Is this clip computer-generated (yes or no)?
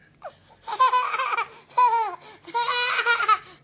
no